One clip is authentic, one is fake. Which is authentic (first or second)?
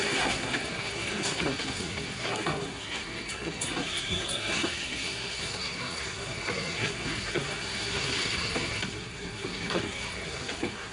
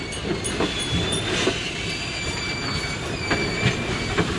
second